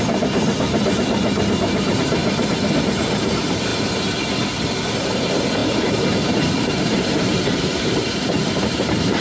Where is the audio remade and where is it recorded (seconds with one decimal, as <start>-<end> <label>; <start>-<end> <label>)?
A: 0.0-2.2 remade; 2.2-2.8 recorded; 2.8-3.7 remade; 3.7-5.0 recorded; 5.0-9.2 remade